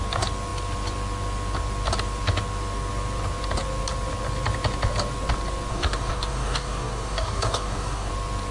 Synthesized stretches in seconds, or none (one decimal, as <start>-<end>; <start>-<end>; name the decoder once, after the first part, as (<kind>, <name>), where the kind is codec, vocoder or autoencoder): 5.7-8.1 (codec, DAC)